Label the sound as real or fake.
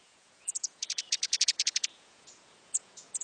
fake